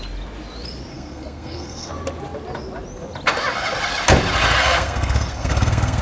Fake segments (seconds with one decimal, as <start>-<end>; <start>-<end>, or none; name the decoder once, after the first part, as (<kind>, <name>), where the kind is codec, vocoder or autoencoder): 0.9-1.9 (codec, SNAC); 4.6-6.0